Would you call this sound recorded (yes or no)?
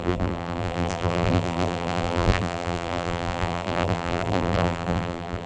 no